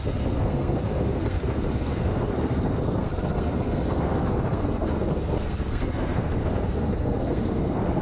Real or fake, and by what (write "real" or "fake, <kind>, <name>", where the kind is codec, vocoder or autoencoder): fake, codec, SNAC